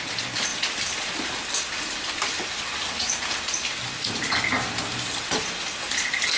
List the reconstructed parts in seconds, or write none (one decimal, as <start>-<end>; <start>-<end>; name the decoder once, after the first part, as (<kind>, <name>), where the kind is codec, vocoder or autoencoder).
none